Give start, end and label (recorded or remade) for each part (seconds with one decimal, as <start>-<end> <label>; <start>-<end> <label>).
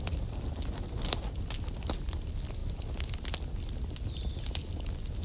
0.0-5.2 recorded